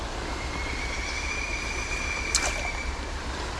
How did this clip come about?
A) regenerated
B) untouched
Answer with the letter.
A